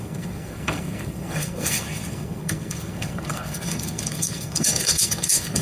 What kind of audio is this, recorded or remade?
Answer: remade